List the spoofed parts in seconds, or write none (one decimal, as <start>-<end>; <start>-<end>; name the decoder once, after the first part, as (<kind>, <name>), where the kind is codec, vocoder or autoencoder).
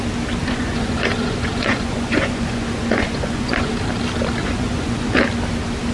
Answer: 0.4-3.7 (vocoder, Vocos); 4.4-5.2